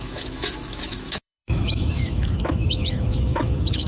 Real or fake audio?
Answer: fake